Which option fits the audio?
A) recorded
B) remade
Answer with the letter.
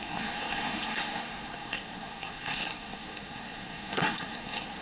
B